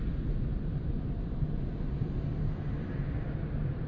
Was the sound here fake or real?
real